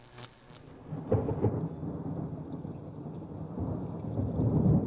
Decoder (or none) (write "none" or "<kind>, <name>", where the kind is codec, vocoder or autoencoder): none